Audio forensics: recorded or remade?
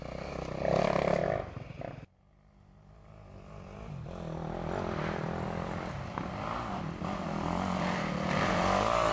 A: recorded